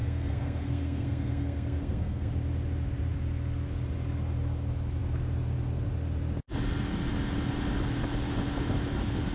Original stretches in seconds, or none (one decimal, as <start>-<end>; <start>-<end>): 2.3-9.3